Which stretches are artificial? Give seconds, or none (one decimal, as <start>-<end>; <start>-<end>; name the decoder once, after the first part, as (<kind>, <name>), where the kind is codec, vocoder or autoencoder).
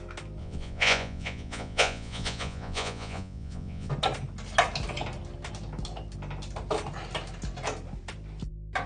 0.4-3.9 (vocoder, Vocos)